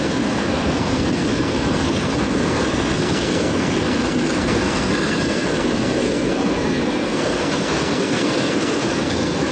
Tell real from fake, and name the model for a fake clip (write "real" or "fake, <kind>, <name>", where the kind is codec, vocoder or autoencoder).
fake, codec, SNAC